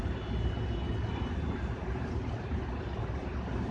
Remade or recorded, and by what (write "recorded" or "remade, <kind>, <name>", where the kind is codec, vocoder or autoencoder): recorded